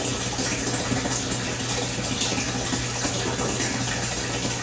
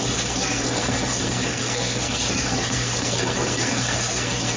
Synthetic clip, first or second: second